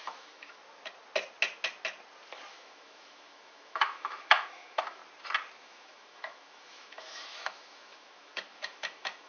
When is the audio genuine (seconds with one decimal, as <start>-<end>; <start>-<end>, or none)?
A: 0.6-2.5; 5.0-5.6